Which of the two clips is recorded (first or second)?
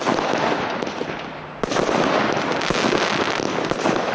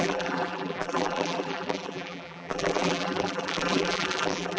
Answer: first